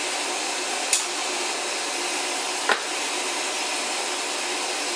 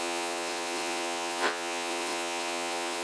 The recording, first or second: first